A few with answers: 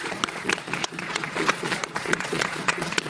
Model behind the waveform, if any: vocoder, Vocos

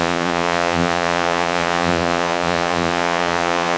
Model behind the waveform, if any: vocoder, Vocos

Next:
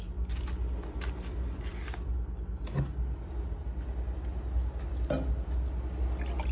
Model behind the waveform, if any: none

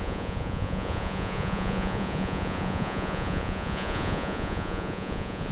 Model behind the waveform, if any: vocoder, Vocos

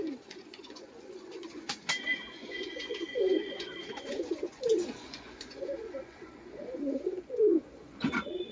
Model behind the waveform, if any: vocoder, Vocos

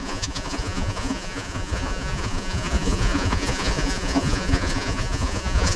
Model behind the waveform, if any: vocoder, Vocos